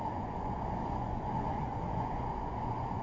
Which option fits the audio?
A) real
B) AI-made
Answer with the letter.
B